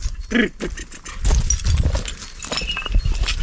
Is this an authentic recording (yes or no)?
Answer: yes